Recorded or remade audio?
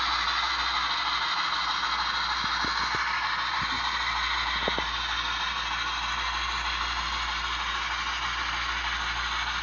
recorded